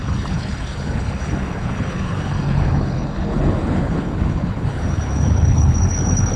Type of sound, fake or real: fake